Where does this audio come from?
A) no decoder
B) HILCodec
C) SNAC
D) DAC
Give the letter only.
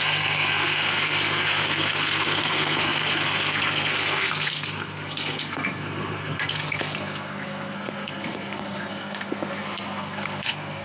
C